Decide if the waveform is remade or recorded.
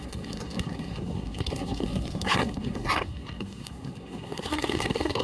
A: remade